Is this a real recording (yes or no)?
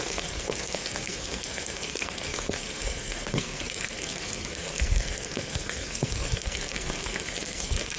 no